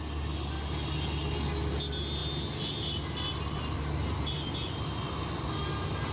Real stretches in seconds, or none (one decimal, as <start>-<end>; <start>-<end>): 0.0-6.1